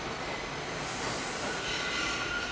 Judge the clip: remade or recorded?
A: recorded